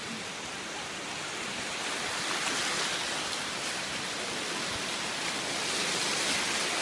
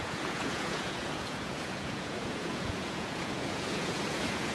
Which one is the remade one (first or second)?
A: second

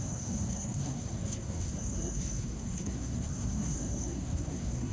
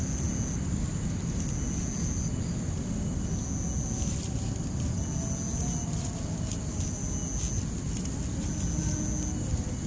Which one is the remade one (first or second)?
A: first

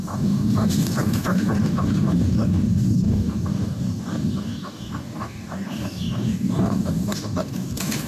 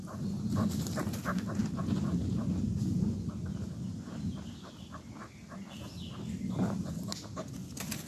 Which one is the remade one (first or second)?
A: first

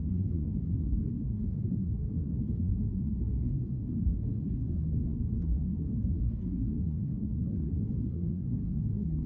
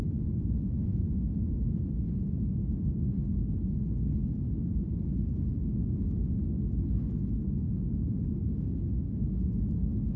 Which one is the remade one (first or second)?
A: first